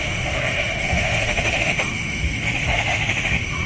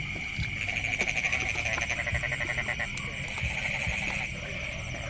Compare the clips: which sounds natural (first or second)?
second